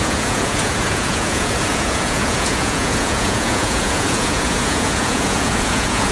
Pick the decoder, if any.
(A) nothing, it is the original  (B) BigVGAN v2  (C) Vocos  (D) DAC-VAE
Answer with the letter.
C